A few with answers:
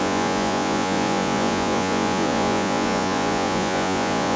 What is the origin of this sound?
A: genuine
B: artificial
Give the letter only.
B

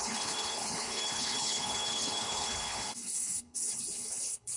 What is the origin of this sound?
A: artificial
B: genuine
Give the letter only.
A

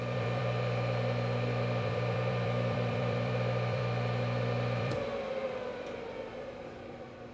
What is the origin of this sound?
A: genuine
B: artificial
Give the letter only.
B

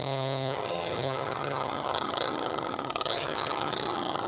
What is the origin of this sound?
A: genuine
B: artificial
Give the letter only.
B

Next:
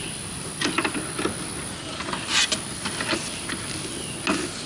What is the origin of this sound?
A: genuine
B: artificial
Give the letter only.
A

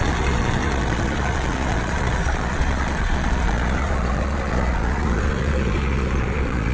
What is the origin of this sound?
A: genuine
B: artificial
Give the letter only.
B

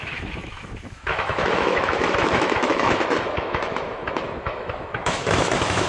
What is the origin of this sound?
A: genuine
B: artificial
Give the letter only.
B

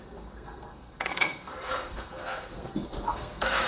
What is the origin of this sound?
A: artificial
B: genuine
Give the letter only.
A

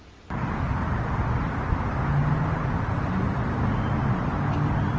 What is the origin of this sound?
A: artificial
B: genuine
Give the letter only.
B